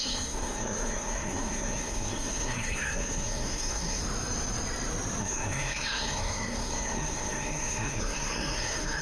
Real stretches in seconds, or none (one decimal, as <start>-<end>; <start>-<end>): 4.0-5.2

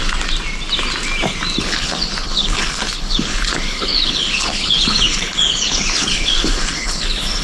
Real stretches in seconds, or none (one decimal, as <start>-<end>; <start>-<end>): 0.0-1.6

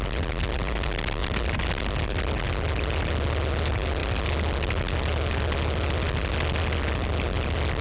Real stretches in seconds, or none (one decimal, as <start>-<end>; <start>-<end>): 0.0-7.8

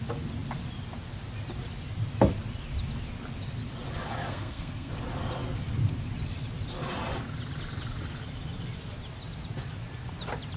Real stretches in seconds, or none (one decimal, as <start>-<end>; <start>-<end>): 0.0-4.3; 4.9-10.6

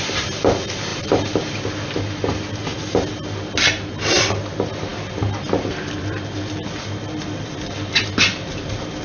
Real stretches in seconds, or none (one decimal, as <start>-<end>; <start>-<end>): 0.0-0.9; 1.5-4.9; 8.0-9.0

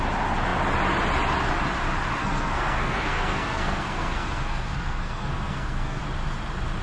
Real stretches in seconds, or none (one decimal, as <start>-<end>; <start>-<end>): 0.0-2.2; 6.0-6.8